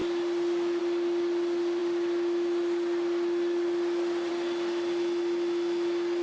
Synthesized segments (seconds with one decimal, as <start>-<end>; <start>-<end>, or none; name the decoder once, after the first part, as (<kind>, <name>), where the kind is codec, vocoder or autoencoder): none